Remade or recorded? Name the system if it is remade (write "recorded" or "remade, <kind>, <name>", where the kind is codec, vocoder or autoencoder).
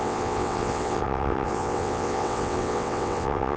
remade, vocoder, WaveNeXt